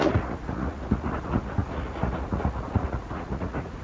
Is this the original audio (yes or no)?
no